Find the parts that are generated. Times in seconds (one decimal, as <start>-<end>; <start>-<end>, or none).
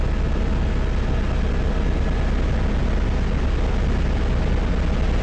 none